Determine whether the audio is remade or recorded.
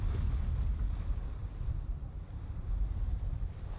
recorded